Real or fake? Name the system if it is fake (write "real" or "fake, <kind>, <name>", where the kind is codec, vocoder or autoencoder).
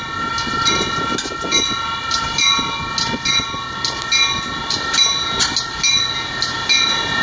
real